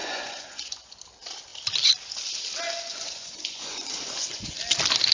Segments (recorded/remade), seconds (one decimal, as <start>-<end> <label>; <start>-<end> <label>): 0.0-0.9 remade; 0.9-2.9 recorded; 2.9-4.6 remade; 4.6-5.1 recorded